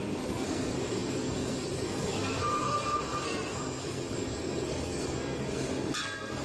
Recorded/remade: remade